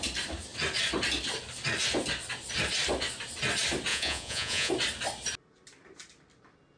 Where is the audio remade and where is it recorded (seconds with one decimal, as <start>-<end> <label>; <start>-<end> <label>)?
0.0-3.9 recorded; 3.9-4.7 remade; 4.7-6.8 recorded